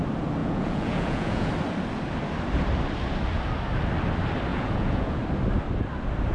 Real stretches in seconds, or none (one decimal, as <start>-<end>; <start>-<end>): 0.0-0.4; 1.5-4.5; 5.2-6.3